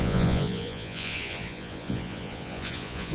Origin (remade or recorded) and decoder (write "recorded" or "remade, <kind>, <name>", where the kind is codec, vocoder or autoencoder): remade, vocoder, Vocos